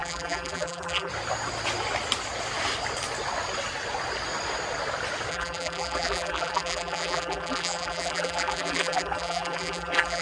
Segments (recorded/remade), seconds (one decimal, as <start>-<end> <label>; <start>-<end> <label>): 0.0-1.1 remade; 1.1-5.3 recorded; 5.3-10.2 remade